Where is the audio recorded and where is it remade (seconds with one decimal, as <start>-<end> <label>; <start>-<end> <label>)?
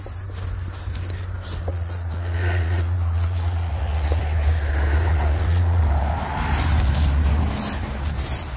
0.0-1.7 recorded; 1.7-4.2 remade; 4.2-5.1 recorded; 5.1-5.8 remade; 5.8-8.6 recorded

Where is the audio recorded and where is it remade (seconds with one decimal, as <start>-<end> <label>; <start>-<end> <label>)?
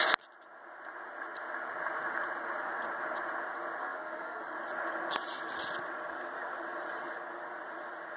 0.0-3.8 recorded; 3.8-4.4 remade; 4.4-8.2 recorded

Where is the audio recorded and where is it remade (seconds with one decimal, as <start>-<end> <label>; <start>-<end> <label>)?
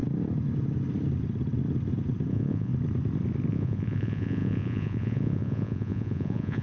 0.0-2.3 recorded; 2.3-2.7 remade; 2.7-3.5 recorded; 3.5-6.6 remade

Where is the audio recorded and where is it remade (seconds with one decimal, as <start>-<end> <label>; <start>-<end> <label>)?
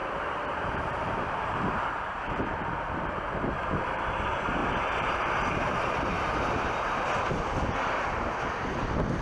0.0-2.4 remade; 2.4-4.6 recorded; 4.6-6.2 remade; 6.2-9.2 recorded